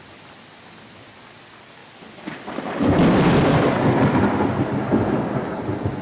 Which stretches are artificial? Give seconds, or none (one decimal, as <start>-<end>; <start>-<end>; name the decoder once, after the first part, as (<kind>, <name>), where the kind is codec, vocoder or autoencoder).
1.8-3.7 (vocoder, BigVGAN v2)